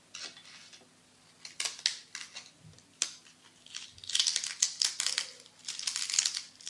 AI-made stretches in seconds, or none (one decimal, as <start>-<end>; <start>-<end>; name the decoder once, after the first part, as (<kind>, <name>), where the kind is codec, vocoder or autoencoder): none